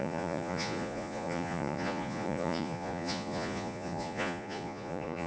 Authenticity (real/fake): fake